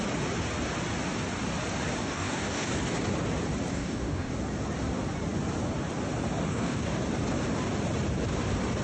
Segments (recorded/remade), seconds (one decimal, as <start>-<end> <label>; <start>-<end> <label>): 0.0-2.0 recorded; 2.0-2.7 remade; 2.7-3.7 recorded; 3.7-4.3 remade; 4.3-6.5 recorded; 6.5-7.0 remade; 7.0-8.8 recorded